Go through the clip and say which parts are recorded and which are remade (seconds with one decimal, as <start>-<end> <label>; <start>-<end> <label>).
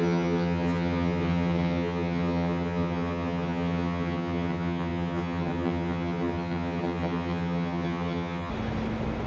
0.0-8.5 remade; 8.5-9.3 recorded